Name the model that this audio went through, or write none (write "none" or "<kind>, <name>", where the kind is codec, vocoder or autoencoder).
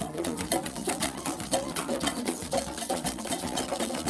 vocoder, WaveNeXt